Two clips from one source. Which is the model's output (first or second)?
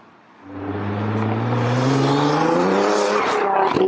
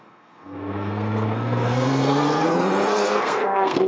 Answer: second